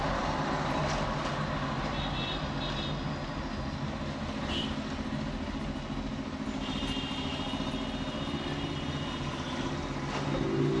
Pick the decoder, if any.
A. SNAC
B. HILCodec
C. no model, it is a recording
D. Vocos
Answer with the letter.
C